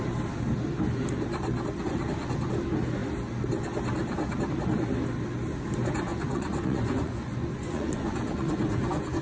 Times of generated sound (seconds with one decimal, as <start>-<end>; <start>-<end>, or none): 6.1-9.2